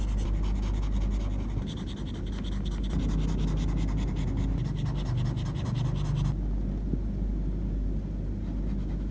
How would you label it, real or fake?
real